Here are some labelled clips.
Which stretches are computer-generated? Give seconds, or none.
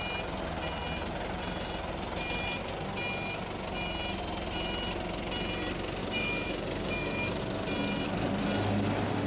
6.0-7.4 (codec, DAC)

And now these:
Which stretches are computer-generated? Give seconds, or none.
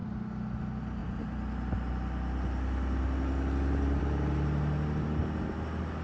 none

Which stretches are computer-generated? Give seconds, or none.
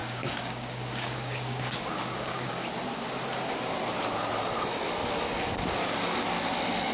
0.0-2.5 (codec, DAC)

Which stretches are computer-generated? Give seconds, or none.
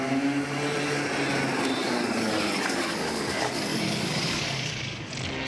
1.8-5.1 (codec, DAC)